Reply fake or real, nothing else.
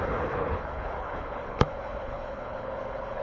fake